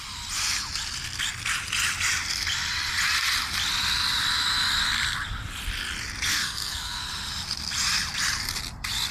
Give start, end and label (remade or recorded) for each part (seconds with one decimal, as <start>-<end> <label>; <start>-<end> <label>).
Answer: 0.0-6.3 recorded; 6.3-7.0 remade; 7.0-9.1 recorded

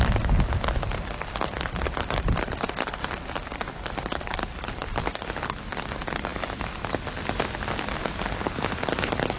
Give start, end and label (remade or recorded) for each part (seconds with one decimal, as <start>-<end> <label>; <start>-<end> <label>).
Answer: 0.0-9.4 recorded

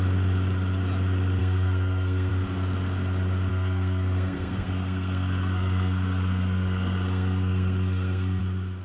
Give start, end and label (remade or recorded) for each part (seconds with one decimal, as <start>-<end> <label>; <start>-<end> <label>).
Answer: 0.0-1.4 recorded; 1.4-2.3 remade; 2.3-3.5 recorded; 3.5-8.4 remade; 8.4-8.8 recorded

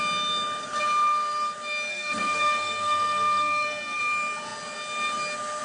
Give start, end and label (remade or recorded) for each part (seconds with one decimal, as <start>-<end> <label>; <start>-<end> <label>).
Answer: 0.0-1.9 recorded; 1.9-4.0 remade; 4.0-5.6 recorded

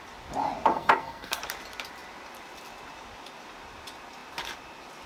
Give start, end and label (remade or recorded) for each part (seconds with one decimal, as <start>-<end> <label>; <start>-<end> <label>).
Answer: 0.0-0.7 recorded; 0.7-1.4 remade; 1.4-5.1 recorded

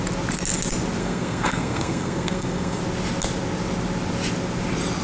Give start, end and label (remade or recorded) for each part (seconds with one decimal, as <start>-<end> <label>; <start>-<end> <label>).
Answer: 0.0-1.0 recorded; 1.0-2.8 remade; 2.8-5.0 recorded

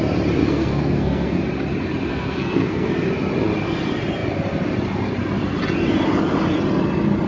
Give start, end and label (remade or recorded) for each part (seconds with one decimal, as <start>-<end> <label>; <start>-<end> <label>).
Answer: 0.0-0.4 recorded; 0.4-1.4 remade; 1.4-2.1 recorded; 2.1-2.9 remade; 2.9-7.3 recorded